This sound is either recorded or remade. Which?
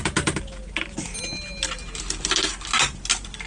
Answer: recorded